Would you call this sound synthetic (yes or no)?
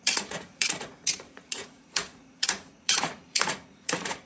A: yes